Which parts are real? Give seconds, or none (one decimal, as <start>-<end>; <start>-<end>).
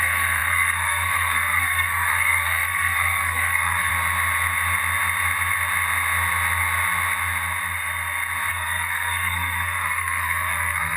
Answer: 3.9-8.5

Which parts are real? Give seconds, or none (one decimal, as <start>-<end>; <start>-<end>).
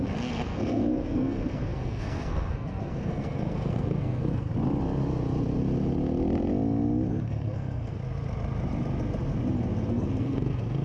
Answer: 4.5-7.1; 8.0-9.9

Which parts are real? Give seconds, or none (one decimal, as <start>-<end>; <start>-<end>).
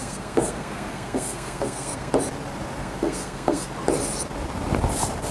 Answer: 2.1-2.8; 3.7-5.3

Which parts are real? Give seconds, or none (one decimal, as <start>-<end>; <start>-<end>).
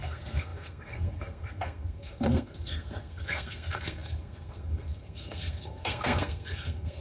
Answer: none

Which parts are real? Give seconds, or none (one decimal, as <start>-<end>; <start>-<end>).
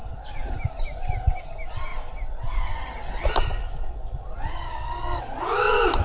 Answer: 0.0-6.0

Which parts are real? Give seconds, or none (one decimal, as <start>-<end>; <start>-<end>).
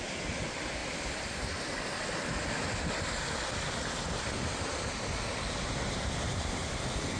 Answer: 0.0-7.2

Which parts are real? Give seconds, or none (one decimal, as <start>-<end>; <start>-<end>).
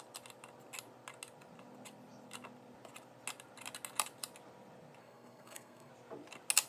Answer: 0.0-5.0; 5.9-6.7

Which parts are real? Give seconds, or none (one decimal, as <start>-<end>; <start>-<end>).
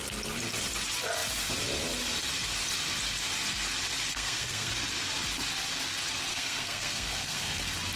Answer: 0.0-4.1; 4.7-6.3; 7.6-8.0